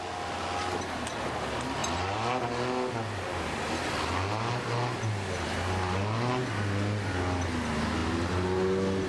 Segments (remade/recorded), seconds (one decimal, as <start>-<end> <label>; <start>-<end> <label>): 0.0-9.1 recorded